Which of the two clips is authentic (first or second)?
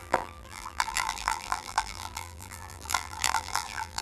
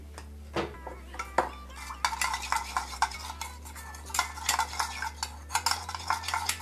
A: second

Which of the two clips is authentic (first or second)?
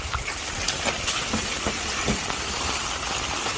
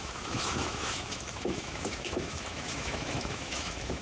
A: first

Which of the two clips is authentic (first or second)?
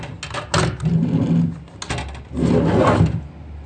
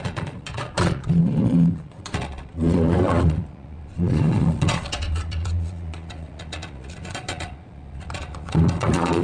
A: first